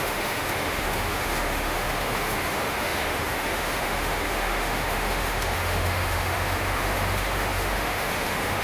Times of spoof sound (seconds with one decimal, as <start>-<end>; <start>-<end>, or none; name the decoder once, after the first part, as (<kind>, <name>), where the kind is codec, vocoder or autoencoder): 0.0-8.6 (autoencoder, DAC-VAE)